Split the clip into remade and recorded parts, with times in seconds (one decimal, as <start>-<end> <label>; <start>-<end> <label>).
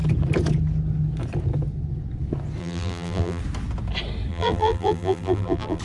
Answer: 0.0-2.6 recorded; 2.6-3.4 remade; 3.4-4.3 recorded; 4.3-5.8 remade